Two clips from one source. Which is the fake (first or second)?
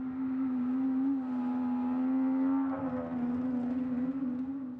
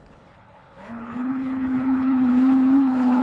second